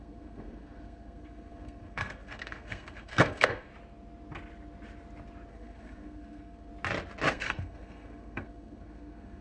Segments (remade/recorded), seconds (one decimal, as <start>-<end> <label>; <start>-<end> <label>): 0.0-3.7 remade; 3.7-5.5 recorded; 5.5-6.7 remade; 6.7-7.3 recorded; 7.3-9.4 remade